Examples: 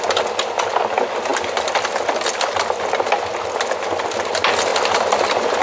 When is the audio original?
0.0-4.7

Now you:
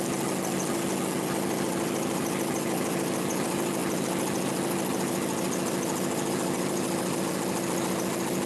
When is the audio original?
0.0-8.5

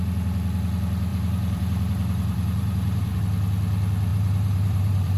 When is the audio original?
0.0-1.1; 3.2-4.1

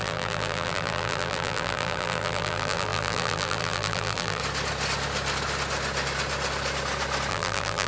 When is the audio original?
4.4-7.3

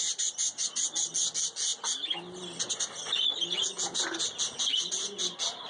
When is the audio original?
0.0-5.7

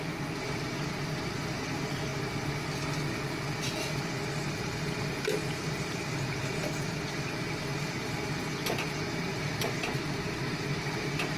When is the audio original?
0.0-5.4; 8.4-9.2